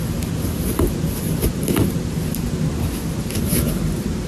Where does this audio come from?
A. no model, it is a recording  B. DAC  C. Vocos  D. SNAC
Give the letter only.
A